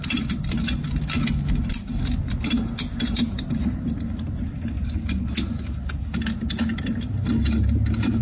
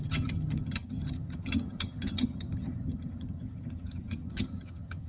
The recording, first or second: first